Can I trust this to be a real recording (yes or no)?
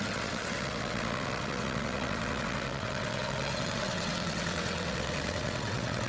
no